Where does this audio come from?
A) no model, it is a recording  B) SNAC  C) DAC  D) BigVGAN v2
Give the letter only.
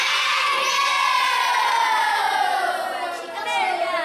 D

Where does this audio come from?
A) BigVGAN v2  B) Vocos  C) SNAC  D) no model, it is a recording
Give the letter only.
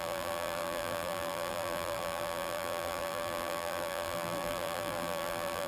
A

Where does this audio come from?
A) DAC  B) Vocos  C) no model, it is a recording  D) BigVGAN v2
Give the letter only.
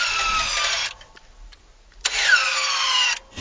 C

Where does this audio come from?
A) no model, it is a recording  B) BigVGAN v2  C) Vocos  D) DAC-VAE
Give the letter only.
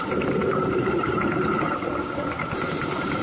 B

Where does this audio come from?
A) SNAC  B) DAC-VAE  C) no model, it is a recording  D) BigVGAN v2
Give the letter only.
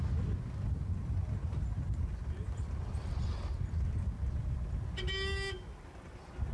C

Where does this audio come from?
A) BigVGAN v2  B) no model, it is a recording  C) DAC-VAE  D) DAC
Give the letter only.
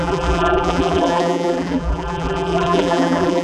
A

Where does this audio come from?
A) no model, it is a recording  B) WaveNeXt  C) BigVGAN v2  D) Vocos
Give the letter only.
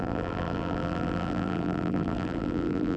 C